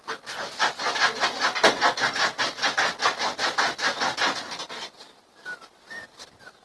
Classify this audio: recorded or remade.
recorded